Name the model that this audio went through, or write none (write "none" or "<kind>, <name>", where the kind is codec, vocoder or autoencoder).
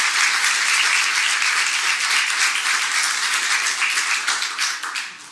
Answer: none